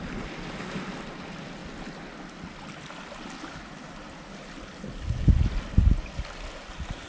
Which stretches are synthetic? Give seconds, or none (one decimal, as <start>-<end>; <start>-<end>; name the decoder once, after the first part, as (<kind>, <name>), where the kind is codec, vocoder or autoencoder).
none